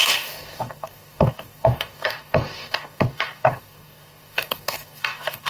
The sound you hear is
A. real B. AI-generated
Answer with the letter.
B